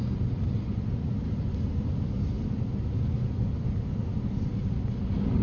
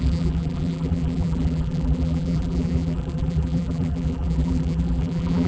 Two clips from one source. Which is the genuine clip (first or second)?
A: first